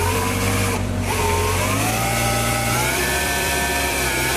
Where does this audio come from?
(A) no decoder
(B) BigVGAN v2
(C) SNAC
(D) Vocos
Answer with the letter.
B